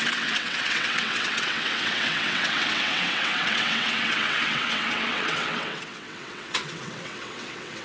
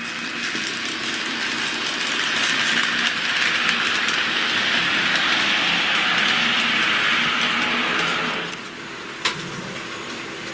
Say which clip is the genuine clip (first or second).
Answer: second